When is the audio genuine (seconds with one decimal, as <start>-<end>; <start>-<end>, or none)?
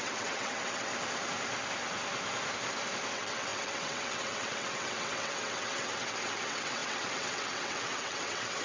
0.9-3.1